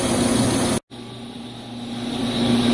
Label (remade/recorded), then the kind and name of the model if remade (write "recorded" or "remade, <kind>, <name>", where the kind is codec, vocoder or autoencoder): recorded